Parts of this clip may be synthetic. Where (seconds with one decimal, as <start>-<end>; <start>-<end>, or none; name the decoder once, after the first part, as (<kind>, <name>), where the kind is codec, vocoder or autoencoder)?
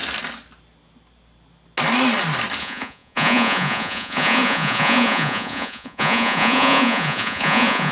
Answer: 2.6-7.9 (vocoder, Vocos)